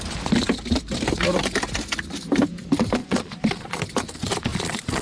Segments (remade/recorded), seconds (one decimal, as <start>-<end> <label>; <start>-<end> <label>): 0.0-3.0 recorded; 3.0-3.8 remade; 3.8-4.5 recorded; 4.5-5.0 remade